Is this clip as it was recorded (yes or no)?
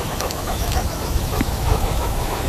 no